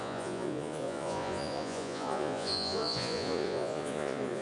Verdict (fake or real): fake